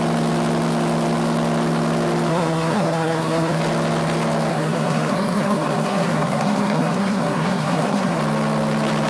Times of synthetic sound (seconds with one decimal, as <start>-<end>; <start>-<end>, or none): 2.3-3.6; 4.5-8.2